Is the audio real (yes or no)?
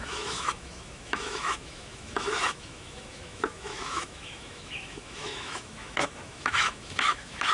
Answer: no